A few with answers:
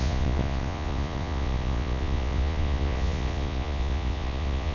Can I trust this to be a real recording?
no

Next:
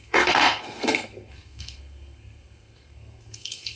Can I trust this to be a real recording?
no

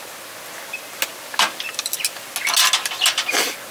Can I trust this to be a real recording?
yes